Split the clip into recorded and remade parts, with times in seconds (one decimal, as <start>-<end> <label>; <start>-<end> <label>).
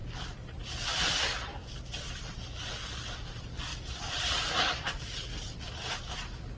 0.0-1.0 remade; 1.0-1.5 recorded; 1.5-2.2 remade; 2.2-3.7 recorded; 3.7-5.9 remade; 5.9-6.6 recorded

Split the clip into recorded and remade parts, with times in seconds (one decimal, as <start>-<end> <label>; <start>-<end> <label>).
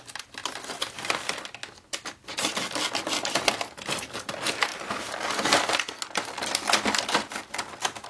0.0-1.6 remade; 1.6-2.3 recorded; 2.3-4.7 remade; 4.7-7.0 recorded; 7.0-8.1 remade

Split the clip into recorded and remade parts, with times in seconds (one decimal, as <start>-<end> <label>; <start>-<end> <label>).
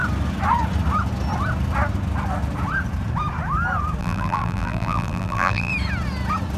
0.0-4.0 recorded; 4.0-5.7 remade; 5.7-6.6 recorded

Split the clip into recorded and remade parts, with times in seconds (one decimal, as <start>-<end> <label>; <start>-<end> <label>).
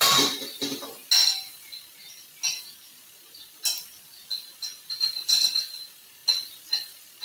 0.0-1.0 remade; 1.0-4.9 recorded; 4.9-6.2 remade; 6.2-6.8 recorded; 6.8-7.2 remade